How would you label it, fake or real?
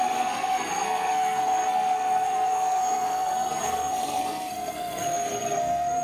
fake